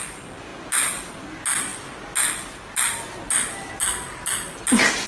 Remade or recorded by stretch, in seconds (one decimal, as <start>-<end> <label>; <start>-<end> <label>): 0.0-5.1 recorded